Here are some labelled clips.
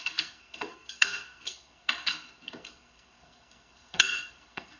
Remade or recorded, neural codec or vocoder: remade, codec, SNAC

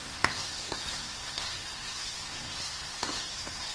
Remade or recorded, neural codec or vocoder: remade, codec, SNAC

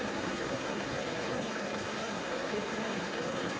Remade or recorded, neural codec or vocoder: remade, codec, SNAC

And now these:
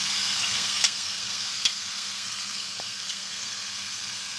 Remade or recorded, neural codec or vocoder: remade, codec, SNAC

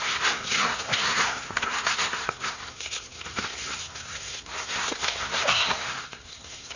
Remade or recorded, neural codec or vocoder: remade, codec, SNAC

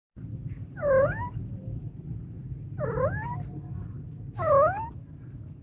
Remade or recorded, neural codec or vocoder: recorded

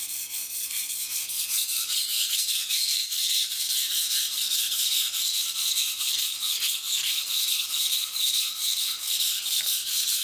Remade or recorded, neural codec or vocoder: remade, codec, SNAC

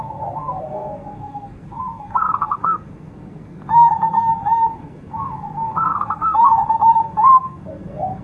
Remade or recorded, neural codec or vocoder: remade, codec, SNAC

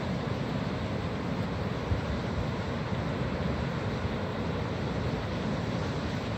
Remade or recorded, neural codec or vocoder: recorded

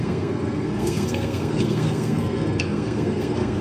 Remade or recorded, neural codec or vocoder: remade, codec, SNAC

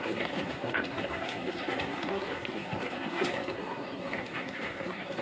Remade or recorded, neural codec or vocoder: remade, codec, SNAC